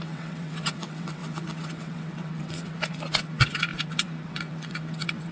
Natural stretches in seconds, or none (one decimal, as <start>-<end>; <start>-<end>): none